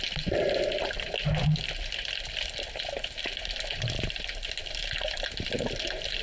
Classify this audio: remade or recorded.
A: recorded